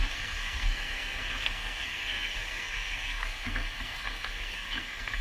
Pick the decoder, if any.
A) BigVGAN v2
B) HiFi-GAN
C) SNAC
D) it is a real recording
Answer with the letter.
C